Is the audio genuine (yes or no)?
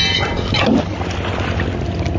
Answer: yes